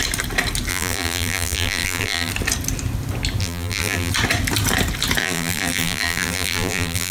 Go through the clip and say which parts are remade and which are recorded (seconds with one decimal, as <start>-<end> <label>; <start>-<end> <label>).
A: 0.0-0.7 recorded; 0.7-2.3 remade; 2.3-3.4 recorded; 3.4-4.1 remade; 4.1-5.2 recorded; 5.2-7.1 remade